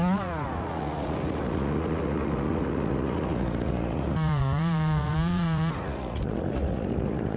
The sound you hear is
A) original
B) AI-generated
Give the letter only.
B